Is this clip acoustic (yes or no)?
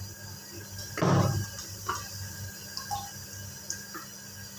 yes